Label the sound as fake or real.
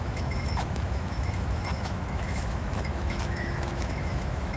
fake